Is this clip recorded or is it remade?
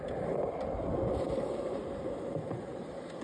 recorded